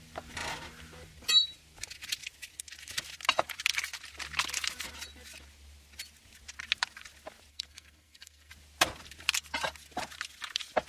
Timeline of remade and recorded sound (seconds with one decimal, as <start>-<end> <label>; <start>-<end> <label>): 0.0-7.5 recorded; 7.5-8.5 remade; 8.5-10.9 recorded